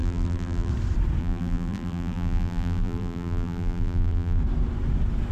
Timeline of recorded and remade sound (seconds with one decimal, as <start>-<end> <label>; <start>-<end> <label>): 0.0-0.7 remade; 0.7-1.2 recorded; 1.2-4.4 remade; 4.4-5.3 recorded